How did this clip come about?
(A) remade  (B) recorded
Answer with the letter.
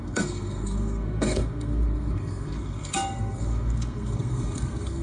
A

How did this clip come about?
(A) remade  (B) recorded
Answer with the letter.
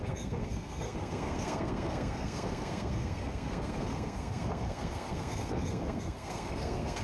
A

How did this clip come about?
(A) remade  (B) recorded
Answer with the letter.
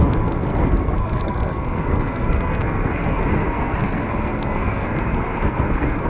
A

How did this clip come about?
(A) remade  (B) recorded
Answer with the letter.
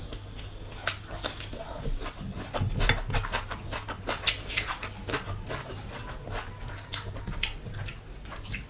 B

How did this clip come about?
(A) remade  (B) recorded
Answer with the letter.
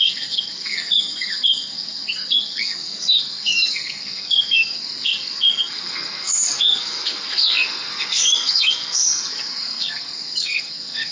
A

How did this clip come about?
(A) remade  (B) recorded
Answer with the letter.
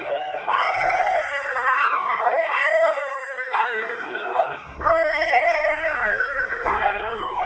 A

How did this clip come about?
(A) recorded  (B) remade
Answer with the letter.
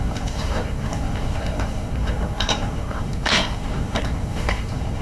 B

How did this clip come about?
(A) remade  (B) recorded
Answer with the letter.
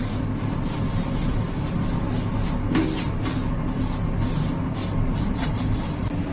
B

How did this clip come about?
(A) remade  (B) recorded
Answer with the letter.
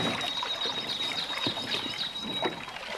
B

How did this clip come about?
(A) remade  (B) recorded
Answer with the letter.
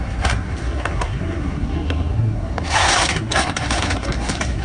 A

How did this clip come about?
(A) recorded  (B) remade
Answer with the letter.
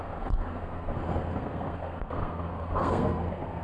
B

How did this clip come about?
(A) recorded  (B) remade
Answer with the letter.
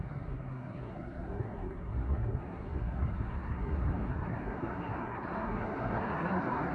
B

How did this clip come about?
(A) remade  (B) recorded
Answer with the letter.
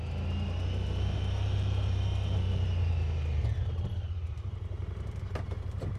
B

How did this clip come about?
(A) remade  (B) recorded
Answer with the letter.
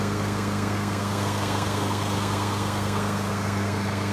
A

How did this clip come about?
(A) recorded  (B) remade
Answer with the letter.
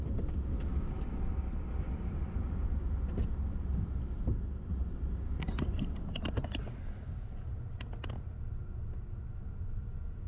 A